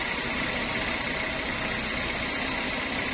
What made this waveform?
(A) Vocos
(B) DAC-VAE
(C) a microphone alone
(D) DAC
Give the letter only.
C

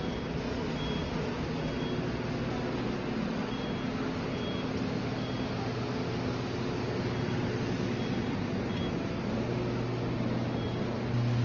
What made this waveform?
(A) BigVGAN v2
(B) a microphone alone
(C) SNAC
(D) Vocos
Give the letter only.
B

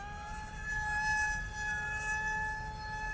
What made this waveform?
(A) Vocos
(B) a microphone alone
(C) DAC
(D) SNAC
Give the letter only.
B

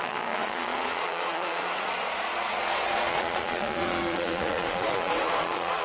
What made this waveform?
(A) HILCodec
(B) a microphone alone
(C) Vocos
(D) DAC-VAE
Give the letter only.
C